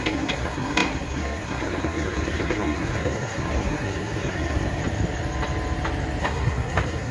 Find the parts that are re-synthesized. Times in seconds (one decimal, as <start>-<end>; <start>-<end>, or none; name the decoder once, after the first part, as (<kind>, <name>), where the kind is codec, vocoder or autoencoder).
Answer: 0.0-4.8 (codec, SNAC); 6.2-7.1